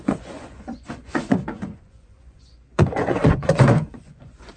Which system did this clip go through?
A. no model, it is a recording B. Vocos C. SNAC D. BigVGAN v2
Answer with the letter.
B